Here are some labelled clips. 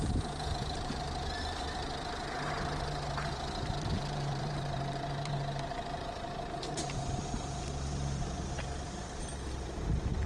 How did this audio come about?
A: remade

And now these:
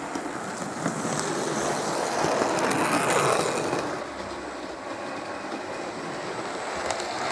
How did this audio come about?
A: recorded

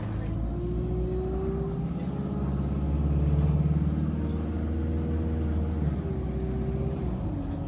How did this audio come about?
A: recorded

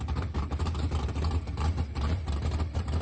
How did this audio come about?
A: remade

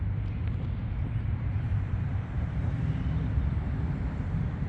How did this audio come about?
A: remade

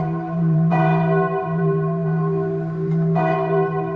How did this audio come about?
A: remade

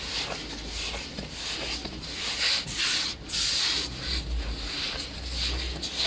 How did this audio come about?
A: recorded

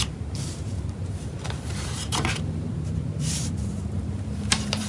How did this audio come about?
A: remade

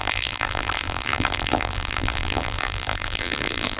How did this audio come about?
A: remade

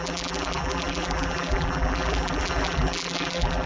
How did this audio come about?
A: remade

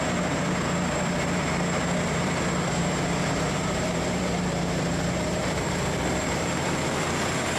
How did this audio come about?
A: remade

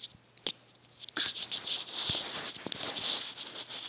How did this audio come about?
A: recorded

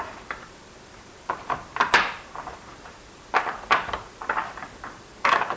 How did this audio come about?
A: remade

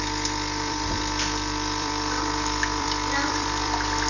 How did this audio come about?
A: remade